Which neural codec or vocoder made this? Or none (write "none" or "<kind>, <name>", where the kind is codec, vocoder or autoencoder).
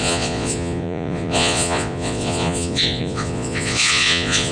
vocoder, Vocos